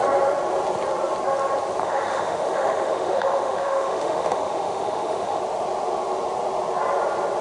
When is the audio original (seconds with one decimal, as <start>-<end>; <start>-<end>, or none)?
0.0-1.8; 5.4-7.4

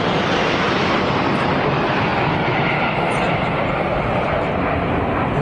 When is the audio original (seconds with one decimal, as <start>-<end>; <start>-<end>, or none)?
0.0-5.4

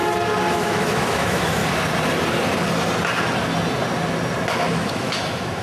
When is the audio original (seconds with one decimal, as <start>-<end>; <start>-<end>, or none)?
0.0-0.5; 1.6-4.7

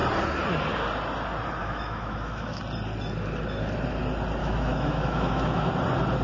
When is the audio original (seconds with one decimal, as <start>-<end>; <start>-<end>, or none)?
0.0-1.6; 2.6-4.4; 5.7-6.2